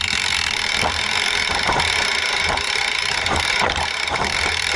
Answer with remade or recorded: remade